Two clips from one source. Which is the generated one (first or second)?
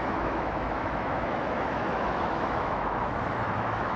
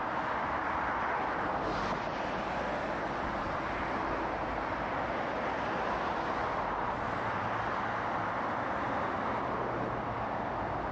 first